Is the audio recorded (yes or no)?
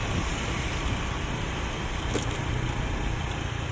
yes